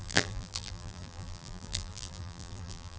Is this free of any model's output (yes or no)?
no